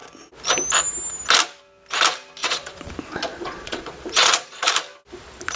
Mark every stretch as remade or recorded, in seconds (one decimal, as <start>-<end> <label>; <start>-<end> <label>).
0.0-2.4 recorded; 2.4-2.9 remade; 2.9-3.3 recorded; 3.3-4.6 remade; 4.6-5.5 recorded